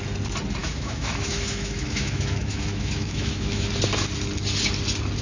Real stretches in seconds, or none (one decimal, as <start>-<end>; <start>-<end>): 0.0-0.6; 3.7-5.2